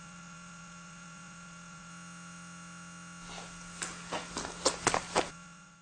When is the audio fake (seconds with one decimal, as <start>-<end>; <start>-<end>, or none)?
0.0-1.9; 5.3-5.8